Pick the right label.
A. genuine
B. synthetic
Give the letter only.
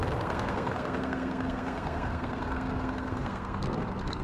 B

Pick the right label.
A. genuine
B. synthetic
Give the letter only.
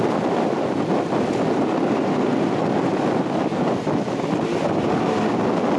A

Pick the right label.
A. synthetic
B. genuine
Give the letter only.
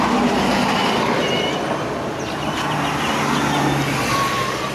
B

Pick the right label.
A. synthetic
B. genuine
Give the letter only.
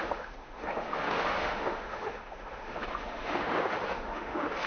A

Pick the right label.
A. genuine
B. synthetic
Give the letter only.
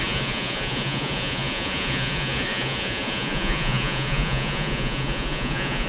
B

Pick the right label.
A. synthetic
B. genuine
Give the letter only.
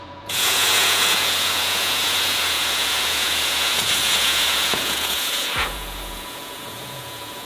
A